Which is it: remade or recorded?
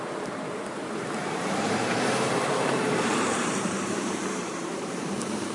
remade